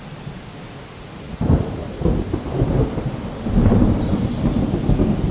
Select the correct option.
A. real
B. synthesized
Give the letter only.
A